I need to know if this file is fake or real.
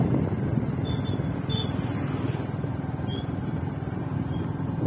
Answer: real